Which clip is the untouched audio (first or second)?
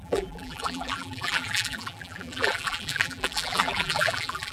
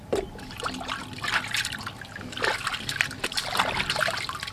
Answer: second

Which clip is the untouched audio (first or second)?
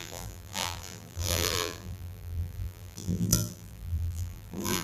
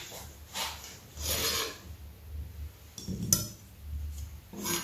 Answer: second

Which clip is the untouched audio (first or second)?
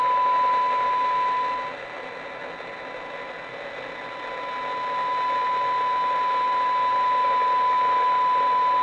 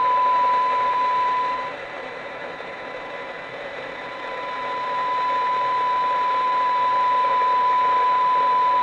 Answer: first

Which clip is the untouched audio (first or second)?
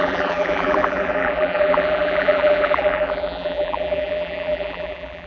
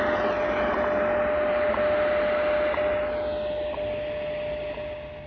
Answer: second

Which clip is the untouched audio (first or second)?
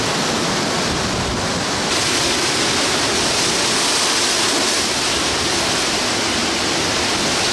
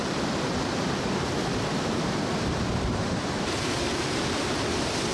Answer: first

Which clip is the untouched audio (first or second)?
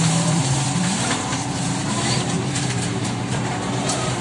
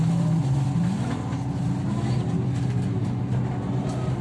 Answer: second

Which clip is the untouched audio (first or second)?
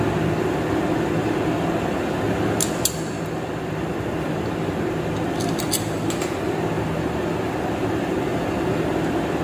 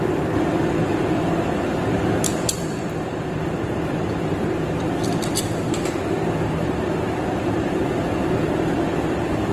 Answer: first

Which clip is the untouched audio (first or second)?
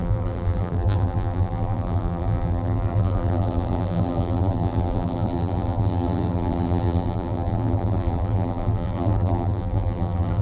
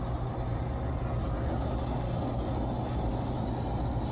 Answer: second